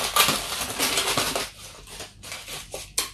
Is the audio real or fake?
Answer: real